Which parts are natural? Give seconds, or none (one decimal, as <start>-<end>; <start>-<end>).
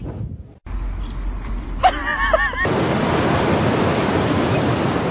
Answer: 0.0-5.1